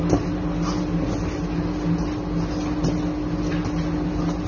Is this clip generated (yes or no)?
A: no